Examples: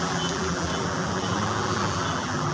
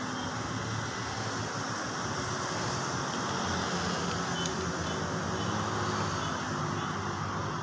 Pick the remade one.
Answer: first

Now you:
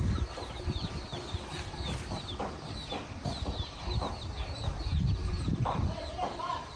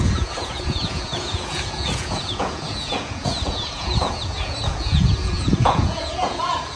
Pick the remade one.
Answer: second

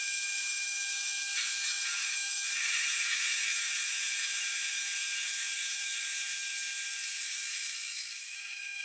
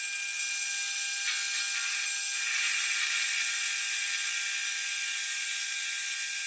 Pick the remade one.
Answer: first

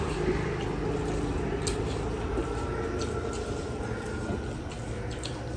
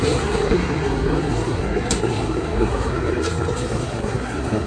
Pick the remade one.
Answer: second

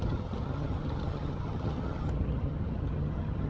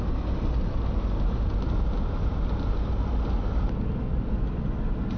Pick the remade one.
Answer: first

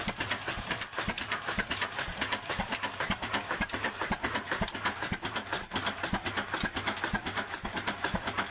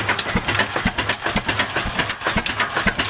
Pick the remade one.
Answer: first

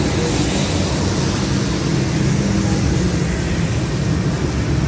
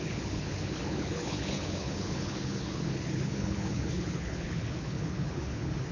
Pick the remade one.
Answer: second